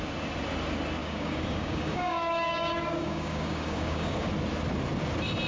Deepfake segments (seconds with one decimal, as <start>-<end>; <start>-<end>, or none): 1.0-4.3